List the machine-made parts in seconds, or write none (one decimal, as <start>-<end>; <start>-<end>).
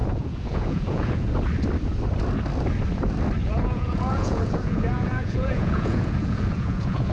0.0-1.3; 3.4-7.1